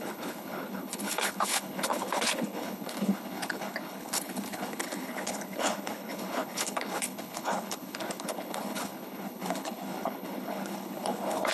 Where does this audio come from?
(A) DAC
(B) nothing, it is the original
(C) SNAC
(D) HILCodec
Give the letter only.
D